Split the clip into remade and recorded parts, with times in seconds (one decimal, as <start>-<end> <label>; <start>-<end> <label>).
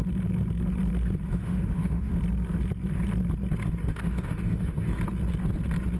0.0-1.3 recorded; 1.3-2.1 remade; 2.1-3.8 recorded; 3.8-5.0 remade; 5.0-6.0 recorded